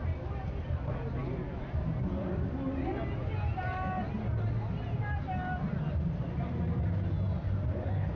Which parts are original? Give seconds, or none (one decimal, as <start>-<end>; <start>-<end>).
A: 0.0-3.5; 4.5-8.2

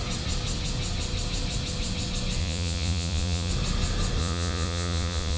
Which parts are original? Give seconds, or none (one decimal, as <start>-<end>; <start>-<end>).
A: 0.0-2.4; 3.5-4.2

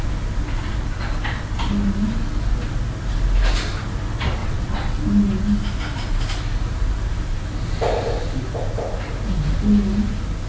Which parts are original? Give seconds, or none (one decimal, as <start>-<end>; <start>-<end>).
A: 0.0-4.4; 5.0-10.5

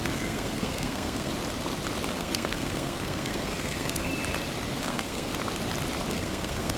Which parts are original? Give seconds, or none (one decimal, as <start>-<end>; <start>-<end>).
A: 1.3-2.1; 4.1-4.8; 5.3-6.1